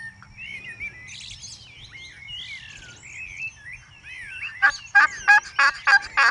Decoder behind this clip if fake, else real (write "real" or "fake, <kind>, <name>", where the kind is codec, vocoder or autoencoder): real